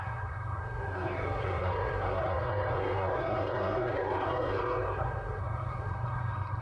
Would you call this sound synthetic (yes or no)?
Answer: yes